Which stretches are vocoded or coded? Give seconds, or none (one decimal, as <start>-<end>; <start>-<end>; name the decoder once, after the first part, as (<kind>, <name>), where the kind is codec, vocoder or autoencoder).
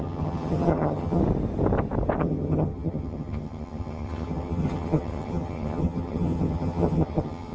0.0-1.2 (vocoder, HiFi-GAN); 2.2-7.5